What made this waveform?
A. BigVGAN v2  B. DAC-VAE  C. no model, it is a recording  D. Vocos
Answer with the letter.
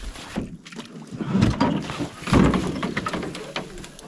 C